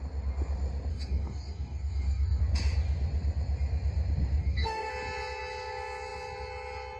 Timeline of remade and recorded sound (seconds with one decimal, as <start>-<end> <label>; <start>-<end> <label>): 0.0-0.9 recorded; 0.9-2.4 remade; 2.4-4.4 recorded; 4.4-4.9 remade; 4.9-7.0 recorded

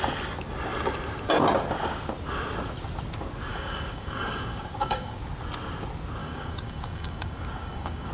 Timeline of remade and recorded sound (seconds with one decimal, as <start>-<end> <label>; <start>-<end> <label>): 0.0-3.5 recorded; 3.5-5.2 remade; 5.2-6.2 recorded; 6.2-8.1 remade